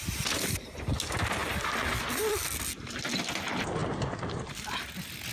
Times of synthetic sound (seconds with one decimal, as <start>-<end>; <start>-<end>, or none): 3.8-4.7